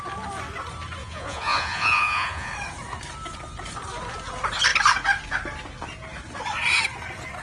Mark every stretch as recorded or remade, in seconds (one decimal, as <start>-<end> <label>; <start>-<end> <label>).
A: 0.0-1.0 recorded; 1.0-2.5 remade; 2.5-7.4 recorded